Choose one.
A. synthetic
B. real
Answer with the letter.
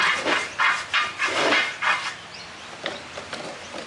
B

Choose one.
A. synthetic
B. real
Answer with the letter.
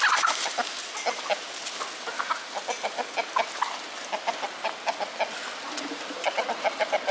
B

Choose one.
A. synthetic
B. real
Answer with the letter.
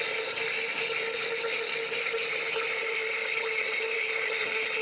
B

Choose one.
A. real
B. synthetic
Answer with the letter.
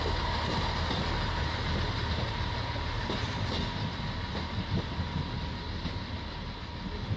A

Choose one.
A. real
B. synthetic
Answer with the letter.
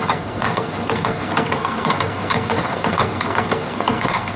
B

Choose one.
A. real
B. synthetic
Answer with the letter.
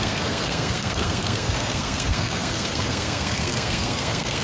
B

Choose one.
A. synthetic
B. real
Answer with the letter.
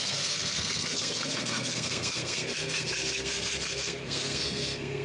A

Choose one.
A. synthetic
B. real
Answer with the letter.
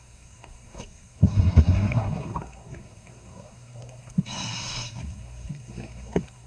A